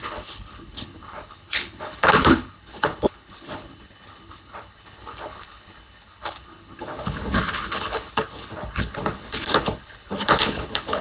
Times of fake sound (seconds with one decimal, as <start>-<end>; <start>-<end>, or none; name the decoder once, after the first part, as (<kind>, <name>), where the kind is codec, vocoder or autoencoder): 0.0-11.0 (codec, HILCodec)